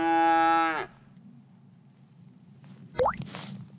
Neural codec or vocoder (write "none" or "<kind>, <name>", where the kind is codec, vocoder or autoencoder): none